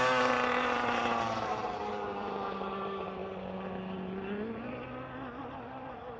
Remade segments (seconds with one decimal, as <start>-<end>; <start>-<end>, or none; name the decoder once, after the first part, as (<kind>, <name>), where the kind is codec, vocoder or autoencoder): 0.0-3.2 (vocoder, BigVGAN v2); 5.4-6.2